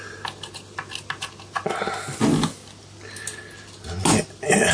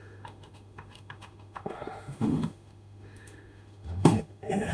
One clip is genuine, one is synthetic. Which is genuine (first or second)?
first